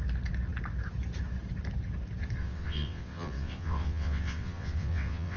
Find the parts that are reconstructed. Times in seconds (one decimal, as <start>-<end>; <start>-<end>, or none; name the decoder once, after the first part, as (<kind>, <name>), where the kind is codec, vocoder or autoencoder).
2.4-5.4 (vocoder, WaveNeXt)